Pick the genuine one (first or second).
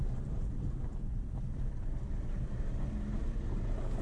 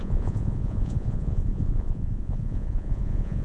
first